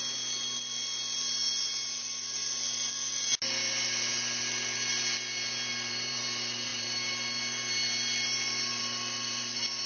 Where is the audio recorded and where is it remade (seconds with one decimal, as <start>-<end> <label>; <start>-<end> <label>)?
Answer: 0.0-9.9 recorded